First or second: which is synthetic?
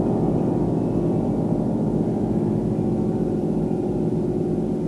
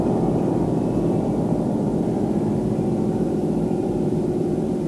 second